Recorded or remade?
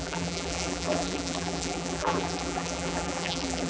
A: remade